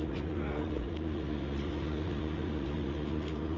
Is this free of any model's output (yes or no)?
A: no